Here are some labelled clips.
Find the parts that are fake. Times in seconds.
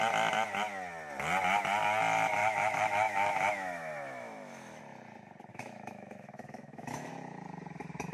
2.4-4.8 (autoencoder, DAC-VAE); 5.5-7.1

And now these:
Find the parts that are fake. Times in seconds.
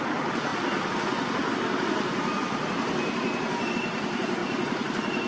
none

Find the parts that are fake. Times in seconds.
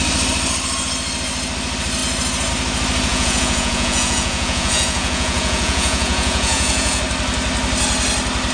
3.1-7.0 (vocoder, Vocos)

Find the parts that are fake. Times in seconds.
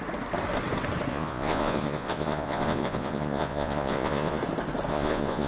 1.1-4.4 (vocoder, Vocos); 4.9-5.5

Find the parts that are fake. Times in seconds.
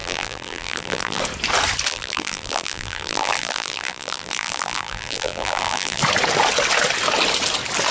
0.0-1.2 (vocoder, BigVGAN v2); 1.9-6.0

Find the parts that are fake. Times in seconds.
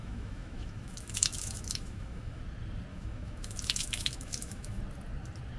0.0-2.4 (autoencoder, DAC-VAE); 2.9-4.8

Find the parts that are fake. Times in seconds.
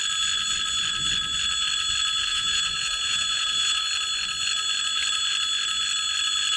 2.3-3.8 (vocoder, Vocos)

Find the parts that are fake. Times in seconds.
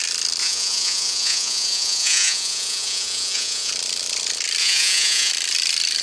0.4-3.7 (vocoder, Vocos); 4.6-5.3